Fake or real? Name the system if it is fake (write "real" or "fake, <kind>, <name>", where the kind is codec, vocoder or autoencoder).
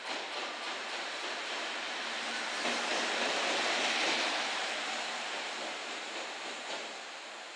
fake, vocoder, BigVGAN v2